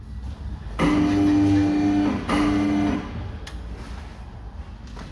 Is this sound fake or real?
real